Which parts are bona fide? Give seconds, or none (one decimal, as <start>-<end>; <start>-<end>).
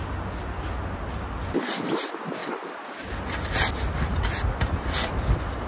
0.0-5.7